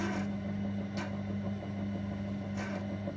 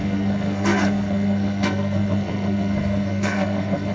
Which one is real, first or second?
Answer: first